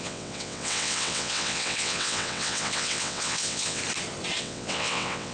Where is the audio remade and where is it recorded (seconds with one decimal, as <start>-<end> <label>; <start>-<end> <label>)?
0.0-3.8 remade; 3.8-4.4 recorded; 4.4-5.3 remade